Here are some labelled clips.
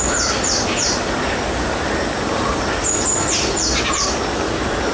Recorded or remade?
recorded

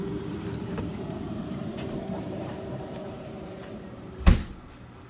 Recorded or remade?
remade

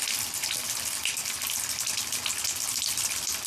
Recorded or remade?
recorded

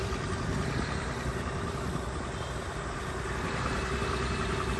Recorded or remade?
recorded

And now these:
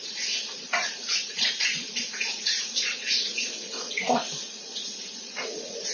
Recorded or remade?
remade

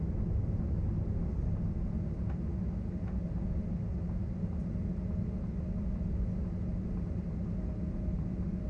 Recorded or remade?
recorded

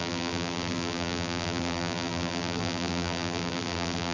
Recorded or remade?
remade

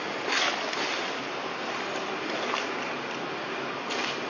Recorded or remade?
recorded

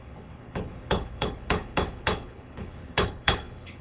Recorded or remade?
remade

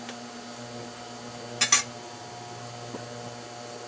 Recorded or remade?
recorded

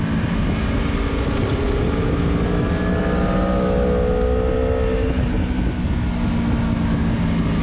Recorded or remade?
recorded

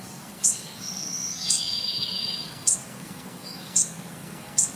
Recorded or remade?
remade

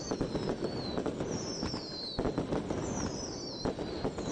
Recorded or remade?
recorded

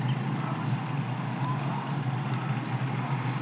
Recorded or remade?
recorded